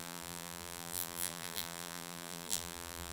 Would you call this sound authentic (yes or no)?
no